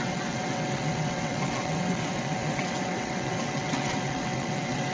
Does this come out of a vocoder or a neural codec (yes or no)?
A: yes